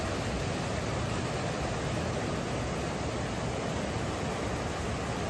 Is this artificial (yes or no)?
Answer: no